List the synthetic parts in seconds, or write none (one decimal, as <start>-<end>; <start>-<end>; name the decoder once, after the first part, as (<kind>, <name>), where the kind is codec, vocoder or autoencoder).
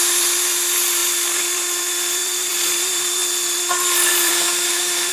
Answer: 0.0-3.2 (vocoder, BigVGAN v2); 4.1-5.1